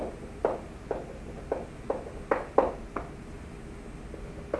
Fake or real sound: real